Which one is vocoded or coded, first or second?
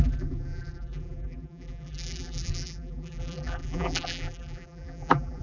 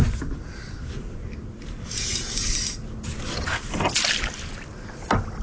first